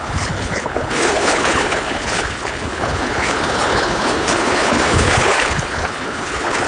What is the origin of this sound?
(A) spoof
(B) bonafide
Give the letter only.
A